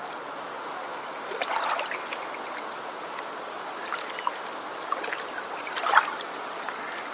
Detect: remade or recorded recorded